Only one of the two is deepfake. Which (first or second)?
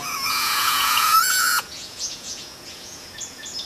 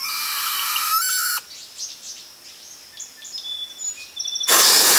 first